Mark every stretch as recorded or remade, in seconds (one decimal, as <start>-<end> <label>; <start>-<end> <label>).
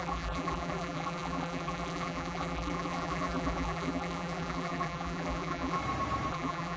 0.0-5.8 remade; 5.8-6.3 recorded; 6.3-6.8 remade